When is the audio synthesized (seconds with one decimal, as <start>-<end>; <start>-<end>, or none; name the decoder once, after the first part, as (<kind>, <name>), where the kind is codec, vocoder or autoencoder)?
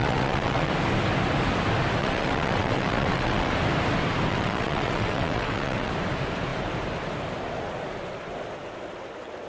0.0-0.7 (vocoder, WaveNeXt); 2.0-3.5; 4.3-5.9